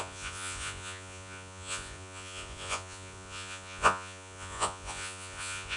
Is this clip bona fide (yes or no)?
no